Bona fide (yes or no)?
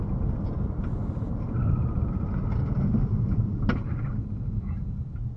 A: yes